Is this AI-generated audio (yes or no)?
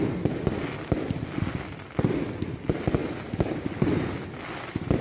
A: no